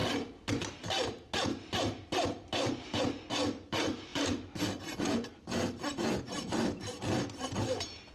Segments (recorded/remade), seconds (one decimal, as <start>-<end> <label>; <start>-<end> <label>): 0.0-8.1 recorded

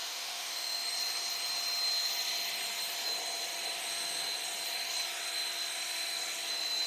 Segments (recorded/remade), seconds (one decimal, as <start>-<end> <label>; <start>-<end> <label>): 0.0-0.8 remade; 0.8-6.9 recorded

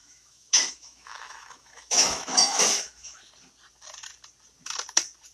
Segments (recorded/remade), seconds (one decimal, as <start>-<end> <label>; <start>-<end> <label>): 0.0-3.2 remade; 3.2-5.3 recorded

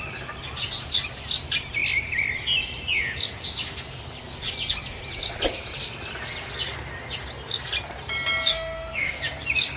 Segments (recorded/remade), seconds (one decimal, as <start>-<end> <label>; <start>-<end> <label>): 0.0-8.5 recorded; 8.5-9.2 remade; 9.2-9.8 recorded

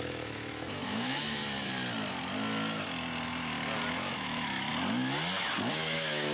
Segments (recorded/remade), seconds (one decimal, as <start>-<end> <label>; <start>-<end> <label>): 0.0-1.4 remade; 1.4-3.9 recorded; 3.9-4.7 remade; 4.7-5.7 recorded; 5.7-6.3 remade

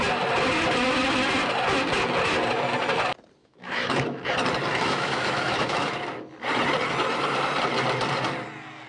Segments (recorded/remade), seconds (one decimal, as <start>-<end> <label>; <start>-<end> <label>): 0.0-3.4 recorded; 3.4-4.2 remade; 4.2-4.7 recorded; 4.7-6.0 remade; 6.0-8.9 recorded

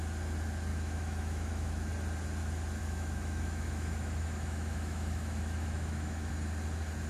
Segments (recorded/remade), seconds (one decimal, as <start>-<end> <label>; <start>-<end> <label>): 0.0-0.7 recorded; 0.7-1.9 remade; 1.9-2.8 recorded; 2.8-6.3 remade; 6.3-7.1 recorded